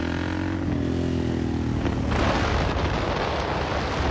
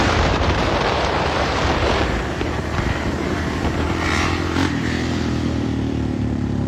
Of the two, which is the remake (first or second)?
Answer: second